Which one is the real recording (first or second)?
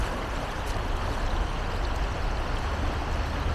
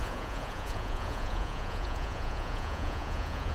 first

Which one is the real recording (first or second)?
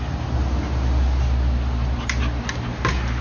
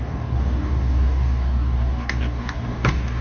first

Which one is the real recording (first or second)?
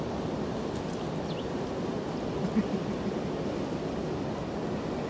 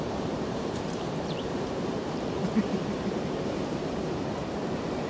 first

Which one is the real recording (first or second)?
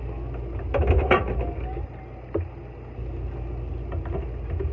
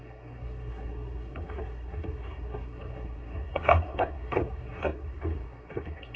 first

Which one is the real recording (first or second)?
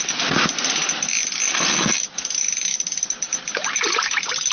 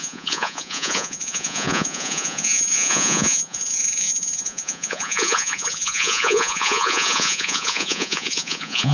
first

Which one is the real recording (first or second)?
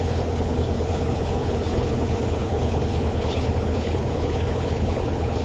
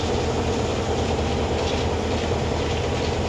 second